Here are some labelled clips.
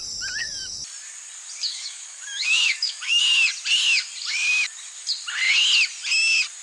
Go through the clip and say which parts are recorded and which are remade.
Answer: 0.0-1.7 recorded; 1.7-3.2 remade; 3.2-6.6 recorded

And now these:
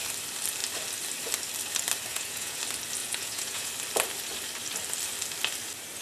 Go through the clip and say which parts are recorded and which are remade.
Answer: 0.0-2.1 recorded; 2.1-2.6 remade; 2.6-3.0 recorded; 3.0-3.7 remade; 3.7-6.0 recorded

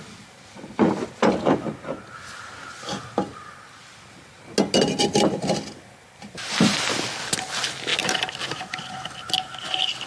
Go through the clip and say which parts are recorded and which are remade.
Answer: 0.0-10.1 recorded

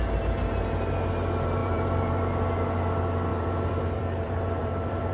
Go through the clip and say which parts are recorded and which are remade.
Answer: 0.0-1.6 recorded; 1.6-2.2 remade; 2.2-3.3 recorded; 3.3-5.1 remade

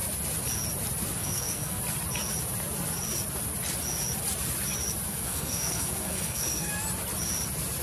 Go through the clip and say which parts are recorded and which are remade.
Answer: 0.0-1.2 recorded; 1.2-1.8 remade; 1.8-5.1 recorded; 5.1-6.7 remade; 6.7-7.8 recorded

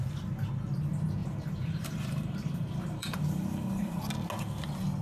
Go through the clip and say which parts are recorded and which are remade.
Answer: 0.0-1.2 recorded; 1.2-4.0 remade; 4.0-5.0 recorded

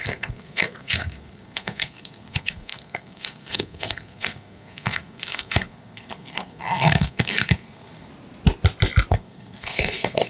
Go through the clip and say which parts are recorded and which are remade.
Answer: 0.0-8.1 remade; 8.1-9.1 recorded; 9.1-10.3 remade

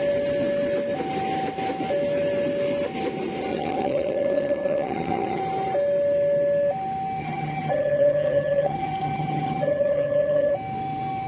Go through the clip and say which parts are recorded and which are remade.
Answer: 0.0-3.5 recorded; 3.5-5.4 remade; 5.4-7.2 recorded; 7.2-10.5 remade; 10.5-11.3 recorded